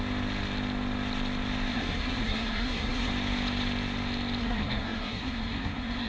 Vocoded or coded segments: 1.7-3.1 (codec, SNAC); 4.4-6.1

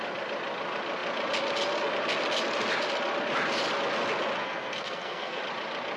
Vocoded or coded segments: 4.4-5.4 (codec, SNAC)